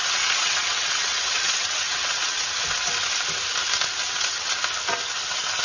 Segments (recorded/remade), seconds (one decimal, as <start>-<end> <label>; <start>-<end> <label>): 0.0-2.6 remade; 2.6-4.0 recorded; 4.0-4.5 remade; 4.5-5.6 recorded